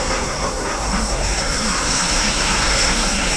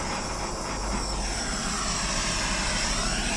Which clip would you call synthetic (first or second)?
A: first